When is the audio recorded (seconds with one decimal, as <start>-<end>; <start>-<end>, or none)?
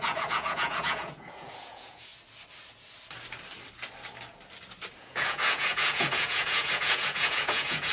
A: 2.1-5.0